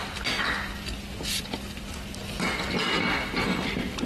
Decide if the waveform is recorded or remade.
recorded